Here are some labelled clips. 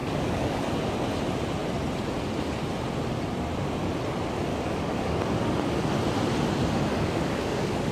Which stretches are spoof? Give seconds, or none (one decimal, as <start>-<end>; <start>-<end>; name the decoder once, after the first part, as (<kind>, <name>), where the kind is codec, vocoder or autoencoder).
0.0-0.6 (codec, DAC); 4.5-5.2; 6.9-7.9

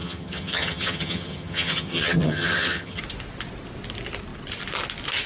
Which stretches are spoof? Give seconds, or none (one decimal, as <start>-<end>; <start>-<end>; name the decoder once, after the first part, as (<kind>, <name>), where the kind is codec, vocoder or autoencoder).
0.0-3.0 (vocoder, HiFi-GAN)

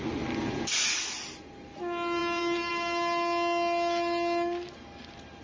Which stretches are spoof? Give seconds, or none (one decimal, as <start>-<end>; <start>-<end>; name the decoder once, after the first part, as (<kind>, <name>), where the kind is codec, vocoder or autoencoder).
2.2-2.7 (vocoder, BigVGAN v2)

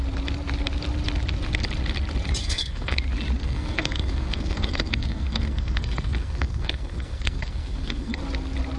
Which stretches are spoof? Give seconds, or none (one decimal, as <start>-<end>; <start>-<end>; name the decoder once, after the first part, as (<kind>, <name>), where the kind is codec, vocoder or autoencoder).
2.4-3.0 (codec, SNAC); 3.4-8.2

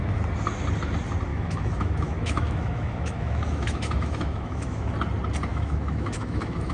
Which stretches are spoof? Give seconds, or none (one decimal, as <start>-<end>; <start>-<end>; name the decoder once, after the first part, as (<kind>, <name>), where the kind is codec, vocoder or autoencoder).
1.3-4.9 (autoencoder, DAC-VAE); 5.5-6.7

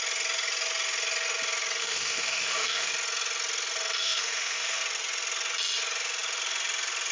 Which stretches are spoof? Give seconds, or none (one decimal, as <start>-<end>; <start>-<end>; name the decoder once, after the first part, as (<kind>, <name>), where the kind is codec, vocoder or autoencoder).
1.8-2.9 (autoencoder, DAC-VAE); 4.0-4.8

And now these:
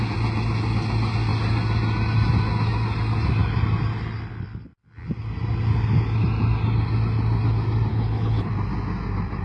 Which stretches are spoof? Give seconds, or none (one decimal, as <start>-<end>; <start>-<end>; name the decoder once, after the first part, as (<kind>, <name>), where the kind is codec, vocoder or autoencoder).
7.9-8.5 (codec, HILCodec)